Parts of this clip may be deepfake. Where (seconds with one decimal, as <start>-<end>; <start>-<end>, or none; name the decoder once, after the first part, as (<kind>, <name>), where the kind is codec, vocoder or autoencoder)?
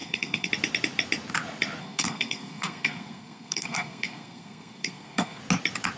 0.0-0.5 (codec, SNAC); 1.8-5.4